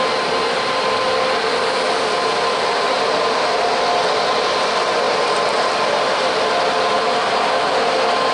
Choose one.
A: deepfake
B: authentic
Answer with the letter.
B